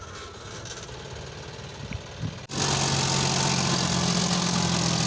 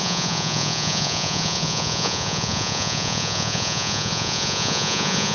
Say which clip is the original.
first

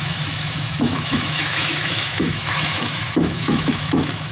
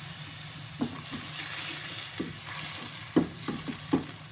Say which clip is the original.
second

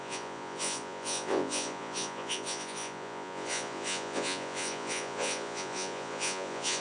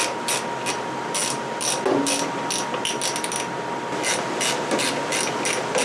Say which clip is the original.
second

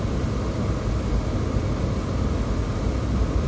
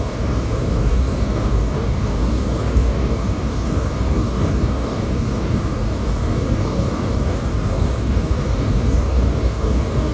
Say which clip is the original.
first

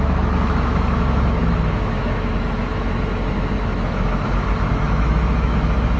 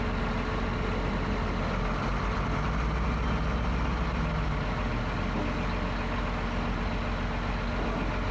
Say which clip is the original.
second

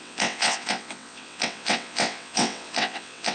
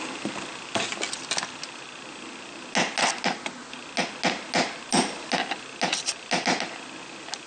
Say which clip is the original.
second